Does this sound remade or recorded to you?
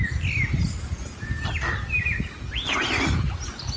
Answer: recorded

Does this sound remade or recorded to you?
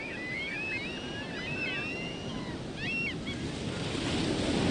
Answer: recorded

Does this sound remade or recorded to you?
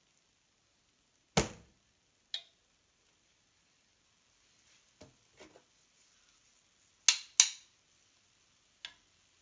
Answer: recorded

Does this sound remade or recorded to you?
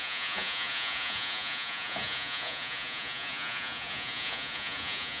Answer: remade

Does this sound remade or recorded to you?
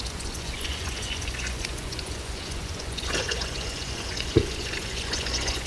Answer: remade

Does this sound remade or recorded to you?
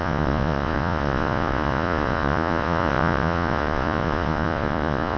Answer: remade